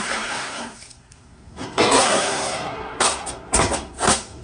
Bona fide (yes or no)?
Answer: no